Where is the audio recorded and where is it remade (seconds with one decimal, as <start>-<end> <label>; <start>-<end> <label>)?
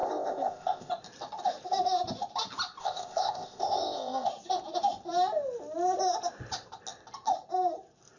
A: 0.0-0.9 remade; 0.9-2.8 recorded; 2.8-4.3 remade; 4.3-8.2 recorded